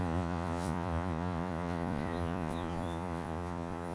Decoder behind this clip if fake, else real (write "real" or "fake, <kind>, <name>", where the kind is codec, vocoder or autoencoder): fake, vocoder, Vocos